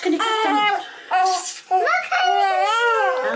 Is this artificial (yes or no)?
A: no